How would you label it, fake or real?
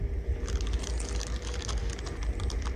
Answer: real